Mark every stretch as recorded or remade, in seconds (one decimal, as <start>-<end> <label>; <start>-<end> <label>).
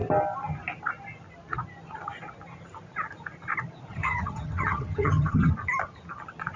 0.0-3.9 recorded; 3.9-5.5 remade; 5.5-6.6 recorded